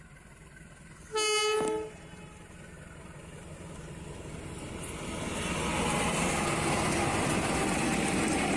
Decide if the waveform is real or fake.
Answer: real